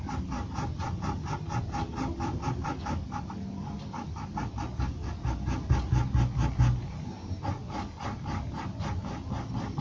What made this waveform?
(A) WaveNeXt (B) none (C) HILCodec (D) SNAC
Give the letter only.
B